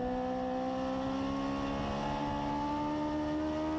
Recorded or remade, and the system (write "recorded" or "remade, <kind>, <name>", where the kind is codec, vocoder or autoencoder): recorded